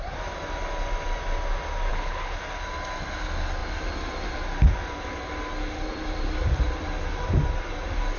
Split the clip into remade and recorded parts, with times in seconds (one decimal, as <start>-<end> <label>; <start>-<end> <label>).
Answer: 0.0-1.9 recorded; 1.9-2.4 remade; 2.4-8.2 recorded